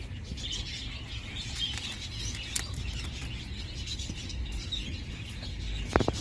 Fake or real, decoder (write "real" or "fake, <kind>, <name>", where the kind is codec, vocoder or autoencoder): real